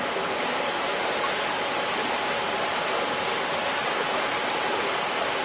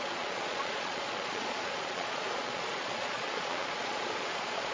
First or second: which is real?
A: first